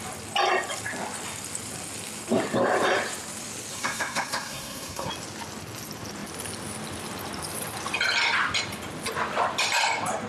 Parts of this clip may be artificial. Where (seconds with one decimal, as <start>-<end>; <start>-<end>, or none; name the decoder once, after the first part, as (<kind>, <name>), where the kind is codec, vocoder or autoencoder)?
3.7-5.1 (codec, SNAC)

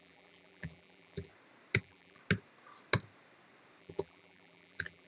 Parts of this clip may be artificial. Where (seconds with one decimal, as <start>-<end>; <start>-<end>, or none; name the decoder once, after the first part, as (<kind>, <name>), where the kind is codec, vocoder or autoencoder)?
0.0-1.3 (vocoder, BigVGAN v2); 1.8-2.2; 3.8-5.1

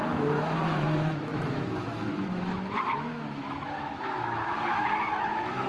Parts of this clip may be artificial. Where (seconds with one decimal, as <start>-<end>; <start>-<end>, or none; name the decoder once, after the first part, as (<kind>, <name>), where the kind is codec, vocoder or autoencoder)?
0.0-5.7 (autoencoder, DAC-VAE)

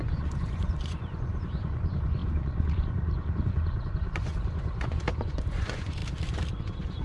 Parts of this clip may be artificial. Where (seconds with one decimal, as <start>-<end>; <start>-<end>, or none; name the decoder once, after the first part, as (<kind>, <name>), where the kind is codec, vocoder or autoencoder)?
0.0-6.0 (vocoder, Vocos); 6.6-7.0